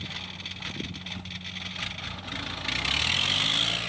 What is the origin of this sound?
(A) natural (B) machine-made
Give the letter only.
A